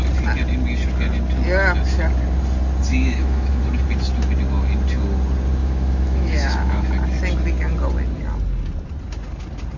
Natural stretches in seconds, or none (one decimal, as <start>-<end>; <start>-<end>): 0.0-2.9; 3.6-5.6; 6.8-9.8